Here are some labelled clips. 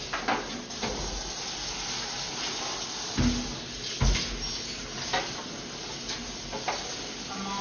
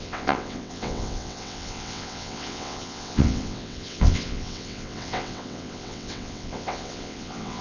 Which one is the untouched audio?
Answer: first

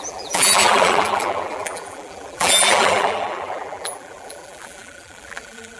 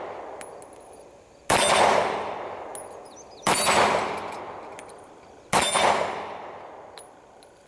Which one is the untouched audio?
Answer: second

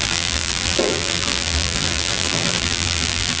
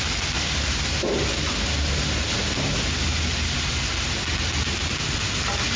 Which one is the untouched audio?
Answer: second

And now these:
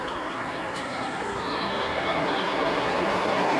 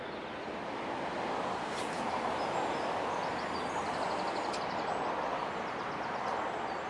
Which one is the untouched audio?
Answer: second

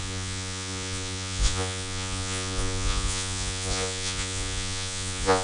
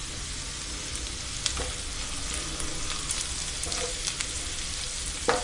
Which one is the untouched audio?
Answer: second